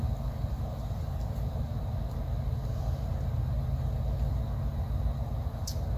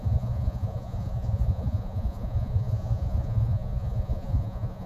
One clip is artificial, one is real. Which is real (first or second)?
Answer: first